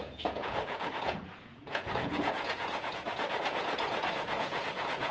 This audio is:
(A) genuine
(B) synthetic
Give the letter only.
B